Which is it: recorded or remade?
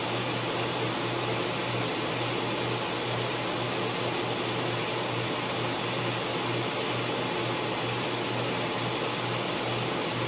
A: recorded